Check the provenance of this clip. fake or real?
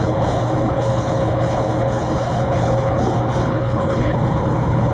fake